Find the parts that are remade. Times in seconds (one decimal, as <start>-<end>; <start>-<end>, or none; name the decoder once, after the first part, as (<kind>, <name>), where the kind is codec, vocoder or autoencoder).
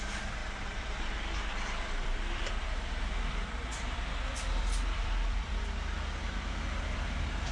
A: 0.4-1.1 (vocoder, BigVGAN v2); 1.5-5.6